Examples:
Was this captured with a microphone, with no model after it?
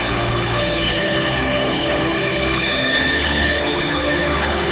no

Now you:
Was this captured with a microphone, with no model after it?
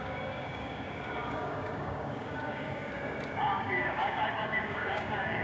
no